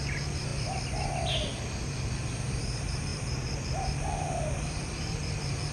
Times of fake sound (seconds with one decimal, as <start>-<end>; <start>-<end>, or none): 0.0-0.5; 1.6-5.7